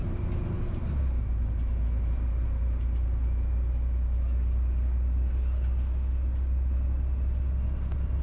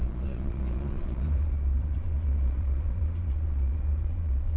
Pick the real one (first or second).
first